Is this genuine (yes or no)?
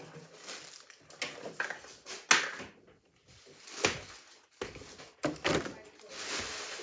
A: yes